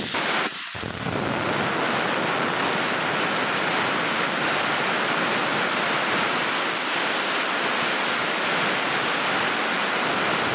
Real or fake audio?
real